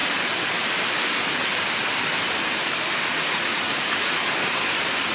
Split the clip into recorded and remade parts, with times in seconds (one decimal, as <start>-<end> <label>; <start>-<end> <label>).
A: 0.0-3.1 recorded; 3.1-4.2 remade; 4.2-5.1 recorded